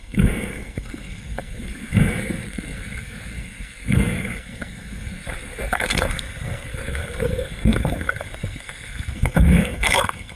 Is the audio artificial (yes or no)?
yes